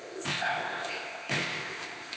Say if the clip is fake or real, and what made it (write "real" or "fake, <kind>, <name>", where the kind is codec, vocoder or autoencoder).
fake, codec, ZipCodec